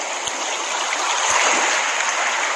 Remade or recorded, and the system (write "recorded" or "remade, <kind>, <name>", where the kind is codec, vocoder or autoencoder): recorded